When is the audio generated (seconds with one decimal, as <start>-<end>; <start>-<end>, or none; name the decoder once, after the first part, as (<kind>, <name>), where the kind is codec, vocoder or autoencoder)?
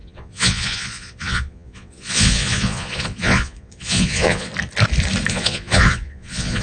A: 0.0-4.5 (vocoder, Vocos); 5.3-6.6